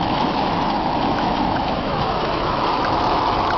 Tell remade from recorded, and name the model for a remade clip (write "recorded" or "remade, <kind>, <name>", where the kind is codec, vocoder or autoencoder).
remade, autoencoder, DAC-VAE